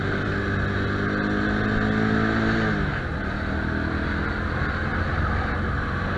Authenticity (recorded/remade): recorded